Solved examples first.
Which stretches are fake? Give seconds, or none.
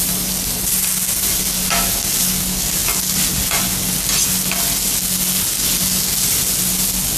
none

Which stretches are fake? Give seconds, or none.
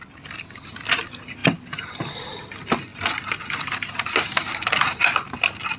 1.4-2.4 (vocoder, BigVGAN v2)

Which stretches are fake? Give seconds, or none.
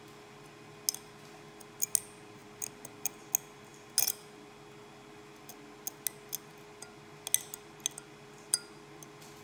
none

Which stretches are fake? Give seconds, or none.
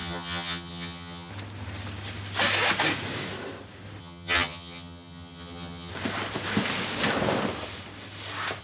0.0-1.3 (vocoder, HiFi-GAN); 4.0-5.9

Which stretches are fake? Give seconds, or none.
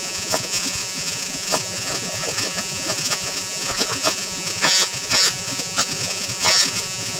0.0-7.2 (vocoder, Vocos)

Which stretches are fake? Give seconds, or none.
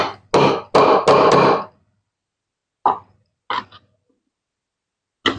none